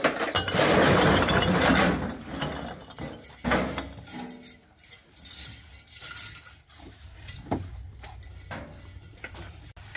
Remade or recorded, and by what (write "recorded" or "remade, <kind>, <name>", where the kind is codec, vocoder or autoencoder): recorded